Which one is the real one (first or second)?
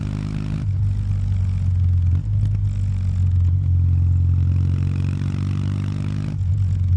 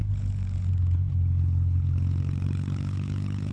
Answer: first